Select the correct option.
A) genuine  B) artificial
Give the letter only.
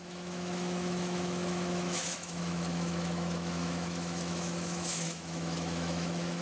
B